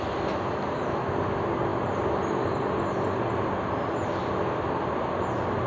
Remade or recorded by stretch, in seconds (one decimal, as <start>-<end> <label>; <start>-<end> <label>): 0.0-5.7 recorded